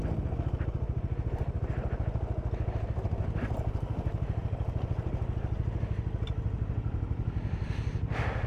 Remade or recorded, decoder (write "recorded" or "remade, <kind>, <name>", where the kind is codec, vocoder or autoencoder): recorded